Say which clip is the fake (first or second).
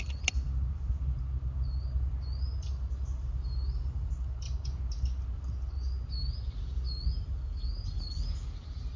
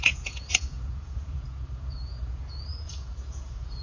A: second